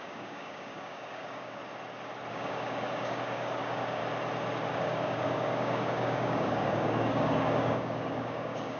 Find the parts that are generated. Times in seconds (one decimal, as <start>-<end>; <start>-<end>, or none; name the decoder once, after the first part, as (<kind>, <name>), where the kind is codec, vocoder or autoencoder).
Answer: 0.0-1.6 (codec, DAC); 2.3-4.0; 4.7-8.8